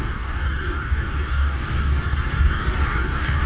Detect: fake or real fake